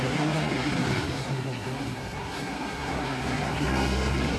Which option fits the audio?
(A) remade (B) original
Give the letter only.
A